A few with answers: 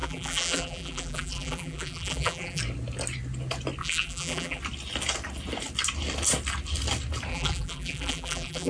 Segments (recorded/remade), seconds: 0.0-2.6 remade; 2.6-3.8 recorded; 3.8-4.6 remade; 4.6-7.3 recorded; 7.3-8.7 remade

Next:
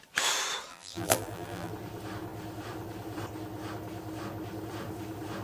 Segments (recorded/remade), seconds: 0.0-0.7 recorded; 0.7-1.7 remade; 1.7-5.4 recorded